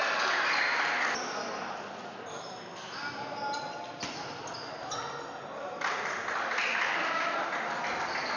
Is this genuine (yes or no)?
yes